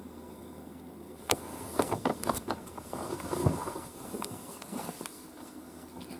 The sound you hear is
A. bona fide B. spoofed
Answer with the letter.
B